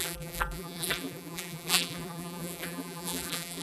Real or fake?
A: fake